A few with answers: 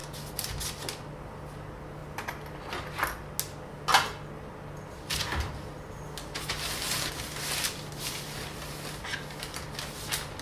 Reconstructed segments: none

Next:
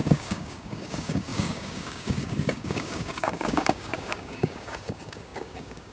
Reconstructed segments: 0.0-5.9 (codec, DAC)

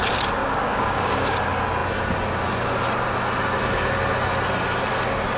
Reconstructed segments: 0.4-1.4 (codec, DAC)

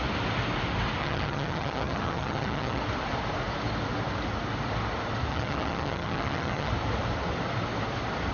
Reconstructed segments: 1.0-2.8 (vocoder, HiFi-GAN); 5.3-6.7

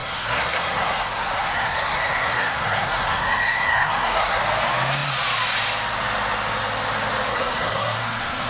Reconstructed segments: 0.0-4.4 (codec, SNAC); 7.3-8.5

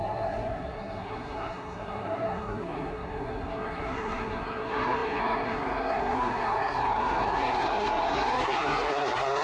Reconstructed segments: 0.0-9.4 (codec, SNAC)

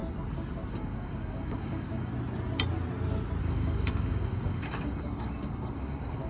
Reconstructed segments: 0.7-2.1 (codec, DAC); 3.4-6.3

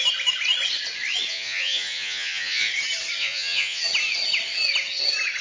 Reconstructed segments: 1.3-2.7 (vocoder, Vocos); 3.2-3.8